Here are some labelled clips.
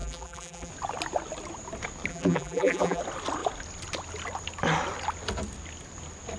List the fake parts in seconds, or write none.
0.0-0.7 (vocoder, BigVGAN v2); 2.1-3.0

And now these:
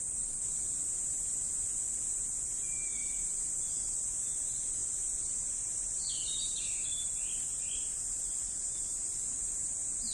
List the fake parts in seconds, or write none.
3.0-3.7 (vocoder, BigVGAN v2)

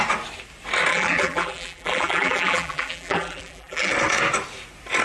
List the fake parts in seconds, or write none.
0.9-3.9 (vocoder, BigVGAN v2)

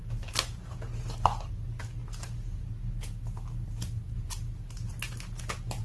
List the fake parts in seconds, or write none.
none

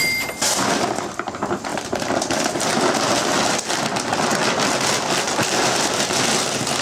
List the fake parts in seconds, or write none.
1.7-2.3 (vocoder, BigVGAN v2)

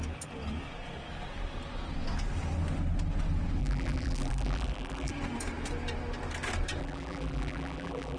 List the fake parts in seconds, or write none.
3.6-5.1 (vocoder, BigVGAN v2); 6.8-8.2

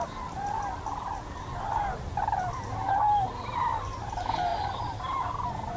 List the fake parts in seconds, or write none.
2.4-3.3 (vocoder, BigVGAN v2); 4.5-5.8

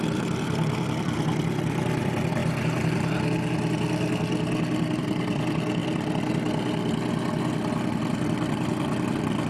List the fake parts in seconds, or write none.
0.0-2.4 (vocoder, BigVGAN v2); 5.0-5.8; 8.0-9.5